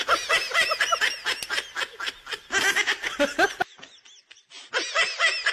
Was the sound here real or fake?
real